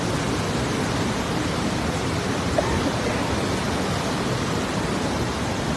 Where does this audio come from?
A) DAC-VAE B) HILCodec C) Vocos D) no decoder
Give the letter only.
D